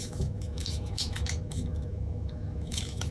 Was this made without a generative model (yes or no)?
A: no